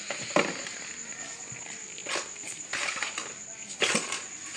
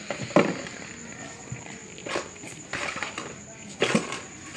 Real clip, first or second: first